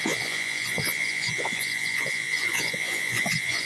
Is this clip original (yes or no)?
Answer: no